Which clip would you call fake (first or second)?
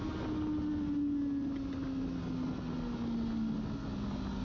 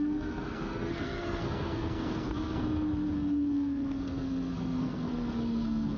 second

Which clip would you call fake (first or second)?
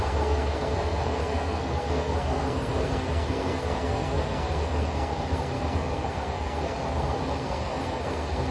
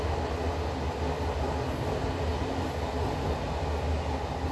first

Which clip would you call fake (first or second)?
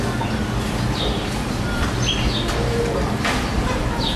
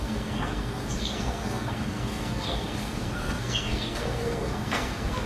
second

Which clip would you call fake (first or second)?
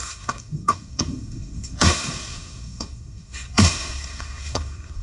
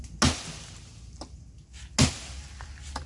first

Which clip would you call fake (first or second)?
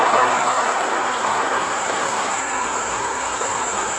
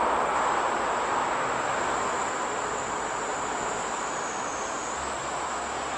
first